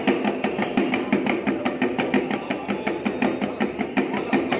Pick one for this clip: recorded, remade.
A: recorded